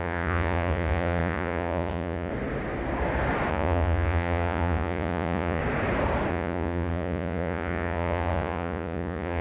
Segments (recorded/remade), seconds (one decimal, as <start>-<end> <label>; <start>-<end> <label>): 0.0-2.3 remade; 2.3-3.5 recorded; 3.5-5.6 remade; 5.6-6.3 recorded; 6.3-9.4 remade